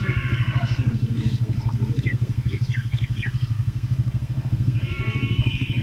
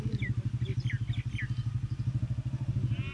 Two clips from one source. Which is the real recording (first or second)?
second